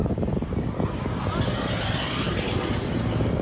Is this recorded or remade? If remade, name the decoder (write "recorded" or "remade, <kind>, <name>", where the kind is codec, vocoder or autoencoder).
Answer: recorded